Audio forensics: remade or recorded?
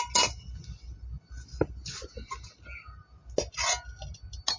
recorded